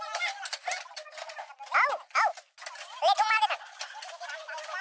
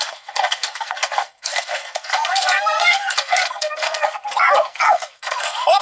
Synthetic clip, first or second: second